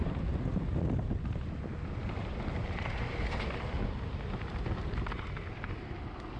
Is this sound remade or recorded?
recorded